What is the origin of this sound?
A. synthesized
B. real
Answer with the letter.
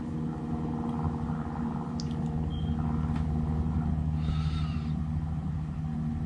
B